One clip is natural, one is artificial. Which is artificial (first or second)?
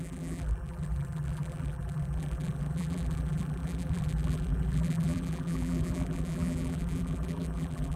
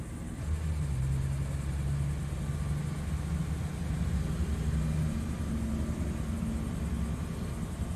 first